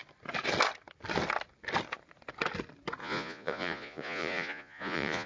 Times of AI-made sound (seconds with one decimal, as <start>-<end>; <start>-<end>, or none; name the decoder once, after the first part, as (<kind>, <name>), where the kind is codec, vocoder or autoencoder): 3.0-5.3 (vocoder, Vocos)